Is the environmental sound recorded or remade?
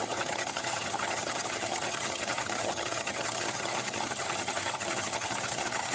remade